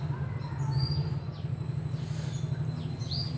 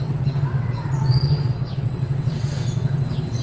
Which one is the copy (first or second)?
second